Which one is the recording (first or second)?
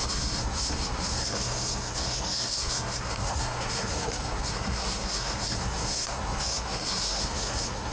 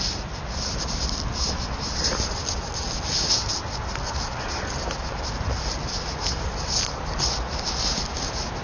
second